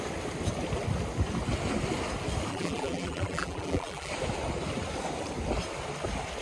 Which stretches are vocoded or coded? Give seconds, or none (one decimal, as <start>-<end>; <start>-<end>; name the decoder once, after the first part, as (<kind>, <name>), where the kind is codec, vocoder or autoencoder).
2.5-4.1 (vocoder, BigVGAN v2)